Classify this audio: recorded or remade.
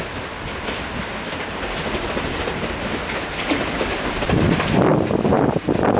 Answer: recorded